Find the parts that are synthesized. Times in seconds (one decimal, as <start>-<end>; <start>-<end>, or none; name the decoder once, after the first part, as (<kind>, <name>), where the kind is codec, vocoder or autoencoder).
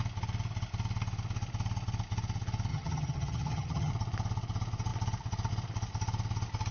2.7-3.9 (vocoder, HiFi-GAN)